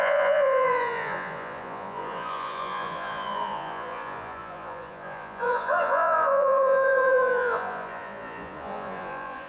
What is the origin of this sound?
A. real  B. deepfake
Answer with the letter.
B